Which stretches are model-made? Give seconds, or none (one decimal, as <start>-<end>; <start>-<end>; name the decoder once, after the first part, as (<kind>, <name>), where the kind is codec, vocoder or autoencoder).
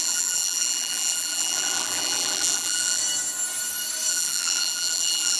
0.0-3.0 (vocoder, BigVGAN v2); 4.1-5.4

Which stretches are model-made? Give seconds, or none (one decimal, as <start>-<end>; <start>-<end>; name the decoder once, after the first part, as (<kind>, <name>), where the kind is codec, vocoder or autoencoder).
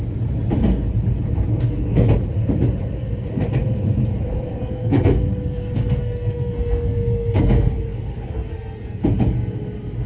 1.5-2.1 (codec, SNAC); 4.5-9.0